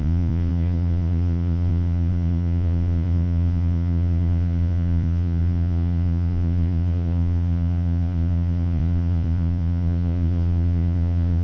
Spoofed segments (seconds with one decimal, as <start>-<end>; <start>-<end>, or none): 0.0-11.4